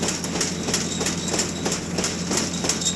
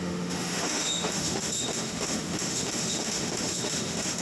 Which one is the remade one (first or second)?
second